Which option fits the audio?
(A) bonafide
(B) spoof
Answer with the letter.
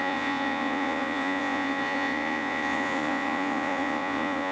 B